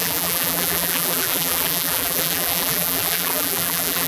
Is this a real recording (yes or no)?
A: no